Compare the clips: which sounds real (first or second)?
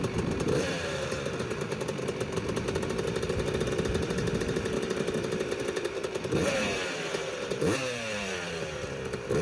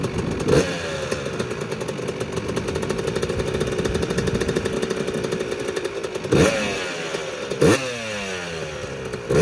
second